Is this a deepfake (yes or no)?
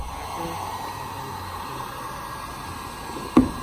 no